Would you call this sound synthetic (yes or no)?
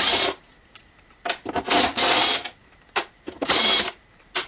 no